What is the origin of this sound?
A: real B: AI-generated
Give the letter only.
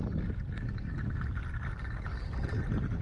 A